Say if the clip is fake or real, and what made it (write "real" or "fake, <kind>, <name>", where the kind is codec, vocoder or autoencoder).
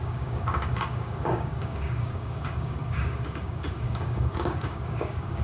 fake, codec, DAC